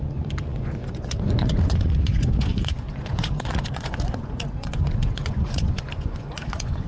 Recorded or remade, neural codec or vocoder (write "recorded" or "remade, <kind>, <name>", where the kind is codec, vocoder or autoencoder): remade, vocoder, Vocos